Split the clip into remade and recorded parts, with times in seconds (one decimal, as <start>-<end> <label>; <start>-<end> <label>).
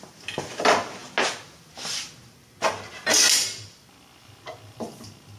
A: 0.0-5.4 recorded